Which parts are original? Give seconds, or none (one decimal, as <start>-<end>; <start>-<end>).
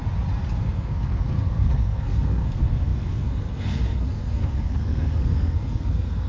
0.0-0.6